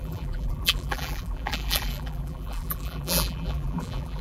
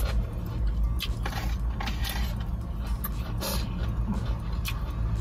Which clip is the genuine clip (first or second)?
second